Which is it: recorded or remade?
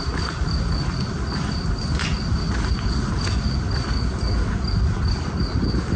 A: recorded